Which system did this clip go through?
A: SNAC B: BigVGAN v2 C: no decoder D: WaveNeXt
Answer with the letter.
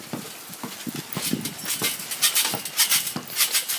C